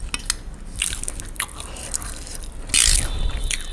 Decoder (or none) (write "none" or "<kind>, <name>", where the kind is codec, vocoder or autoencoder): none